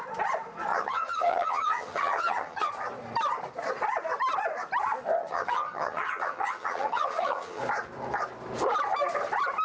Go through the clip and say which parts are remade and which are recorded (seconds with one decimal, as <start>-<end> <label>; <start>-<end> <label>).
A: 0.0-0.7 recorded; 0.7-2.7 remade; 2.7-5.2 recorded; 5.2-7.6 remade; 7.6-9.6 recorded